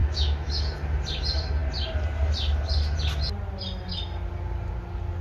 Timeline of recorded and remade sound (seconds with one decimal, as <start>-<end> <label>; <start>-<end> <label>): 0.0-0.6 remade; 0.6-5.2 recorded